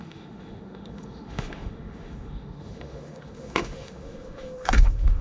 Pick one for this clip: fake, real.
fake